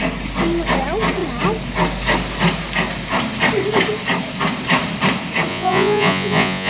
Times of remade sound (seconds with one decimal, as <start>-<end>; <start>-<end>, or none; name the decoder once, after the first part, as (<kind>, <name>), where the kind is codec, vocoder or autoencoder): 5.5-6.7 (vocoder, Vocos)